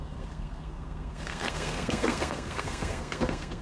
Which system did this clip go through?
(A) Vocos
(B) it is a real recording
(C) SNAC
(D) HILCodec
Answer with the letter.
C